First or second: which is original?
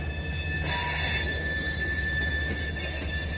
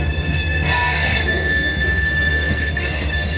first